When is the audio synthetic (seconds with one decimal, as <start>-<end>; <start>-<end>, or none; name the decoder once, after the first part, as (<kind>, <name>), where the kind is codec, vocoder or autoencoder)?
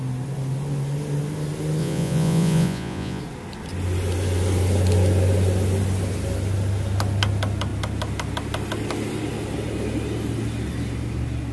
1.8-3.2 (vocoder, Vocos)